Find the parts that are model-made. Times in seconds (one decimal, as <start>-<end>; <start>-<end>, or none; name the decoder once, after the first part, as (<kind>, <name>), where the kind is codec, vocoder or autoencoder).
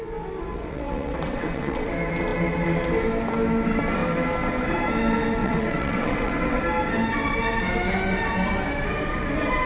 0.5-1.9 (vocoder, WaveNeXt); 5.4-6.6